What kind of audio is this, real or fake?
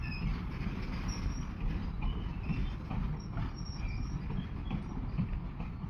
real